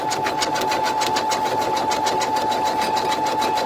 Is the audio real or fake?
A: real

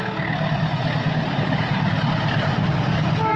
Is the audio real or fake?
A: real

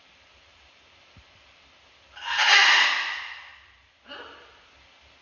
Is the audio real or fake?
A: real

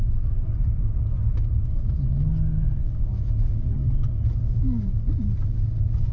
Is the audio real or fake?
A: real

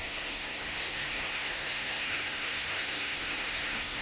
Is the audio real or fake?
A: fake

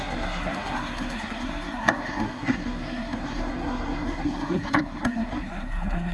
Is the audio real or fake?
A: fake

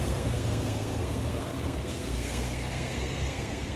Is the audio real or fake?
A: fake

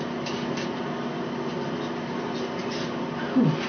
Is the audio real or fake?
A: real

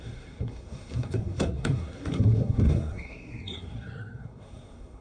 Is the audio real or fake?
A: fake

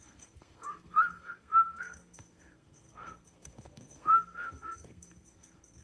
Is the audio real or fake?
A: fake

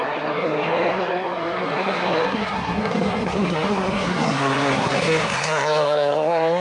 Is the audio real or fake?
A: fake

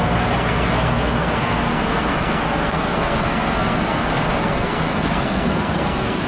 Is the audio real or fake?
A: fake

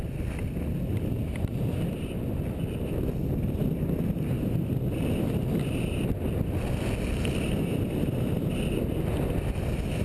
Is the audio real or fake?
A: real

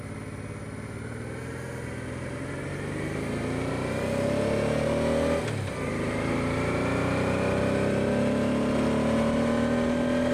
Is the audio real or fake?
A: real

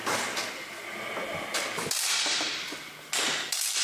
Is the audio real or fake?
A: real